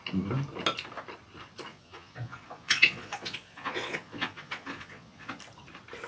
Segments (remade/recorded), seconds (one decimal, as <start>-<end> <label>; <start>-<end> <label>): 0.0-1.7 recorded; 1.7-5.4 remade; 5.4-6.1 recorded